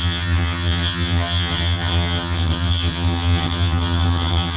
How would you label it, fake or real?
fake